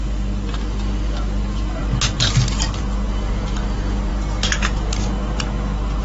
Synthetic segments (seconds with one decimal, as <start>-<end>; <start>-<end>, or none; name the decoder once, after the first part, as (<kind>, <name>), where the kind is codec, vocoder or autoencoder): none